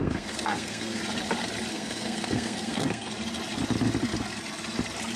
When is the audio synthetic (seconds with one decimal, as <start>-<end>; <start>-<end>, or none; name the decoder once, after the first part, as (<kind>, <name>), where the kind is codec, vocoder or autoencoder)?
0.0-1.0 (codec, SNAC); 1.7-3.1